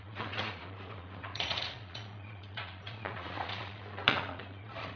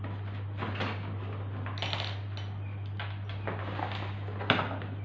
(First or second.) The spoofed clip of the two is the first